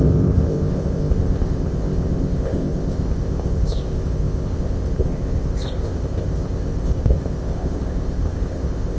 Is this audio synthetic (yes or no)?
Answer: yes